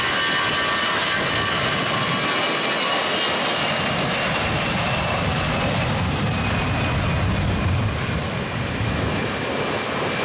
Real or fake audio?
real